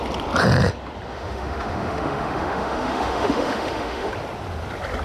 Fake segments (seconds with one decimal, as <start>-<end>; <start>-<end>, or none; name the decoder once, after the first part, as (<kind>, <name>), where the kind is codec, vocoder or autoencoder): 1.1-4.1 (autoencoder, DAC-VAE)